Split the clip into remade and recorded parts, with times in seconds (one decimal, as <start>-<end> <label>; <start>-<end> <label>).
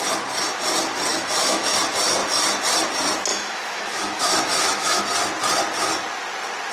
0.0-1.1 recorded; 1.1-1.8 remade; 1.8-3.3 recorded; 3.3-5.0 remade; 5.0-6.7 recorded